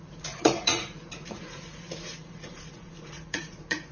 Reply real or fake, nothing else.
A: fake